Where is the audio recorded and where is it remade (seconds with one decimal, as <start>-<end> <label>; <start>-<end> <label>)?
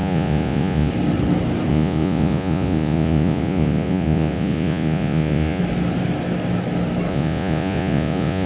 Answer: 0.0-0.9 remade; 0.9-1.7 recorded; 1.7-5.6 remade; 5.6-7.1 recorded; 7.1-8.5 remade